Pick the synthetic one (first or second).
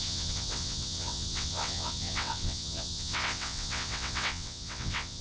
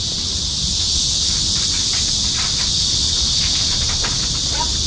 first